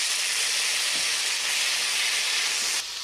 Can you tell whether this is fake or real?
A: real